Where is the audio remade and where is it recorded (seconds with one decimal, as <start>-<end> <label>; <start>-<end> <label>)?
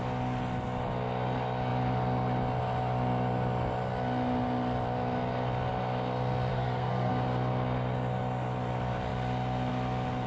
0.0-6.5 recorded; 6.5-7.1 remade; 7.1-10.3 recorded